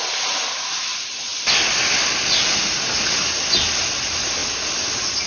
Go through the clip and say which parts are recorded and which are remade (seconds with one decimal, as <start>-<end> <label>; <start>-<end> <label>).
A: 0.0-1.3 recorded; 1.3-3.2 remade; 3.2-5.3 recorded